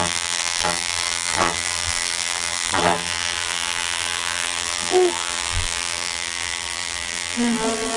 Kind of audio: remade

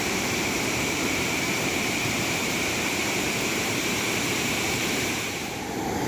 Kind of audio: remade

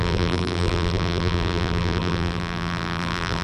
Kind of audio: remade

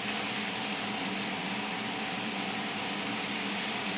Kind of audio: remade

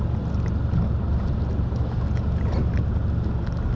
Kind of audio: recorded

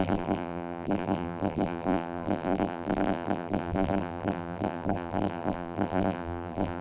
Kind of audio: remade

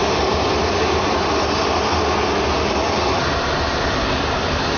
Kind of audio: remade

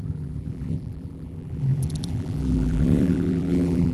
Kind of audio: remade